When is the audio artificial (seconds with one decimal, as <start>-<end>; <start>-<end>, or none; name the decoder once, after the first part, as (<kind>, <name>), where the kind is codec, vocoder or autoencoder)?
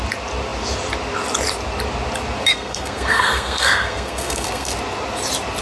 2.5-4.7 (codec, SNAC)